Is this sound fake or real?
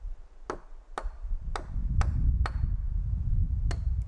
real